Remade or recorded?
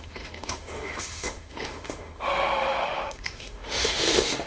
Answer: remade